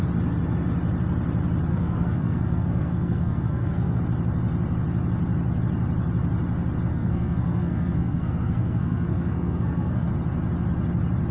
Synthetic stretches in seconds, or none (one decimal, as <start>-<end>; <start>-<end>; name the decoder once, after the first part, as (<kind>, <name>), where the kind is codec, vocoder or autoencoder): 1.7-4.0 (codec, SNAC); 6.9-10.1